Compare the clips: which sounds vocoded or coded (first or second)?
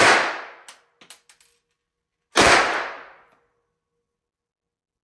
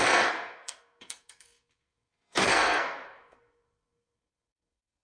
second